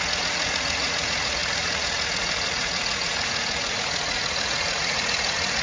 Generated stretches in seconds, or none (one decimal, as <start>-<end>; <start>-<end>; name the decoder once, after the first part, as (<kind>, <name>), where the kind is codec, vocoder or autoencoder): 0.0-5.6 (vocoder, Vocos)